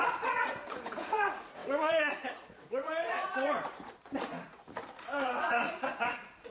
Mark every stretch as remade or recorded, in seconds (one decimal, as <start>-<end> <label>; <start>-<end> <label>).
0.0-6.5 remade